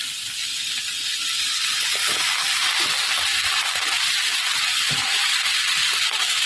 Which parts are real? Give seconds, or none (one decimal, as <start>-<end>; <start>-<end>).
0.0-6.5